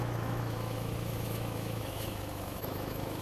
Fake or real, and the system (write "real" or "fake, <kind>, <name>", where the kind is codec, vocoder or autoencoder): fake, autoencoder, DAC-VAE